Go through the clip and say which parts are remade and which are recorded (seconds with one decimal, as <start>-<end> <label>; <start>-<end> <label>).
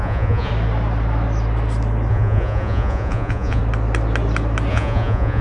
0.0-0.5 remade; 0.5-2.1 recorded; 2.1-3.6 remade; 3.6-4.7 recorded; 4.7-5.4 remade